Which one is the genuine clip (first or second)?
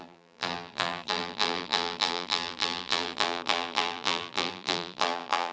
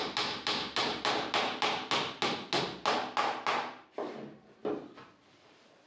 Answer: second